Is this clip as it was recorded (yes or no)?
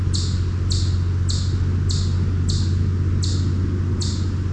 yes